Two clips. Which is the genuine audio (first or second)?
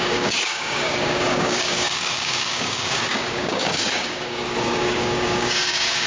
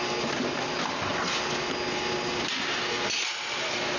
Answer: second